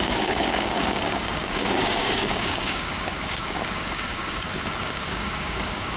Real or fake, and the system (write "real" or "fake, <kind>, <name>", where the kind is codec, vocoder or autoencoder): fake, codec, DAC